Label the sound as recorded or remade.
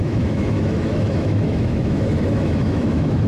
remade